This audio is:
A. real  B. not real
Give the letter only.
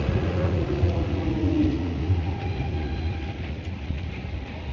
B